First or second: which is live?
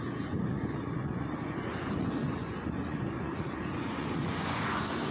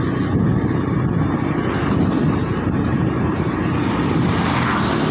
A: second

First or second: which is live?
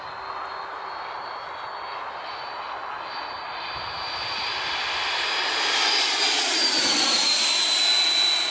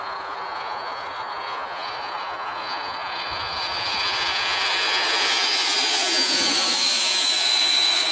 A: first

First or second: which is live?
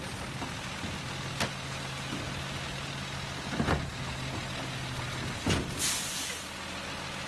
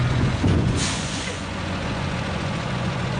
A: first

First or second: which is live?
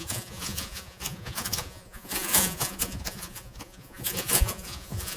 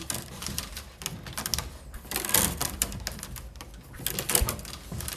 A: second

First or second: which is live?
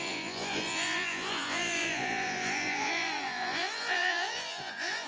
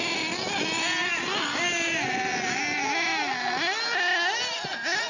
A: second